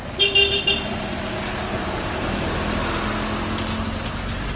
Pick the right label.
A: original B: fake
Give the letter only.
A